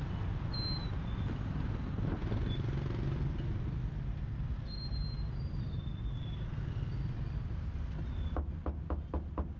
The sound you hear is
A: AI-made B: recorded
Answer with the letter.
B